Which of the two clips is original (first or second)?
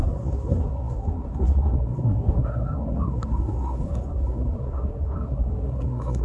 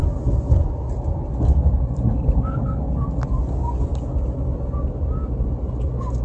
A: second